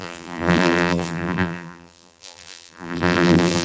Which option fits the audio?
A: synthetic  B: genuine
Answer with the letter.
A